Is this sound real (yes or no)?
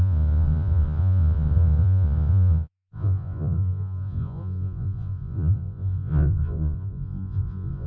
no